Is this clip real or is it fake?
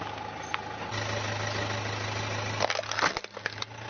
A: real